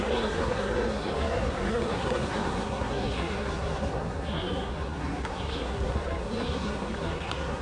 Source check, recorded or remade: remade